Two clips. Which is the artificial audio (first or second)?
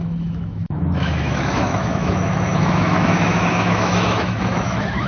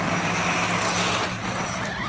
first